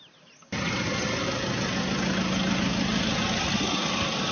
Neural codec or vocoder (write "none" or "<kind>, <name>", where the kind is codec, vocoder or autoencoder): none